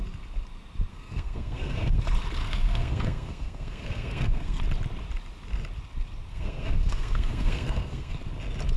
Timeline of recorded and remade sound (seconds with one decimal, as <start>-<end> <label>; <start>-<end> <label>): 0.0-0.9 recorded; 0.9-2.0 remade; 2.0-2.4 recorded; 2.4-4.6 remade; 4.6-6.3 recorded; 6.3-8.1 remade; 8.1-8.8 recorded